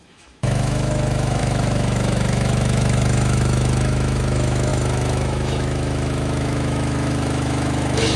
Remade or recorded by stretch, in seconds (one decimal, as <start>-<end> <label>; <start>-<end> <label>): 0.0-8.2 remade